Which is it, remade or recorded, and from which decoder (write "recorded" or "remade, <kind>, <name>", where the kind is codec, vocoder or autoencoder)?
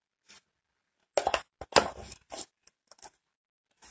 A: recorded